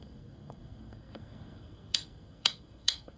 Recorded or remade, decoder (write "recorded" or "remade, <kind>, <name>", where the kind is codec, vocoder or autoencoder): remade, codec, SNAC